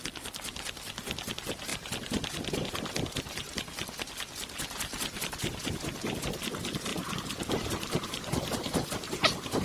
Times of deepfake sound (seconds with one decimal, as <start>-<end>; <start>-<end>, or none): none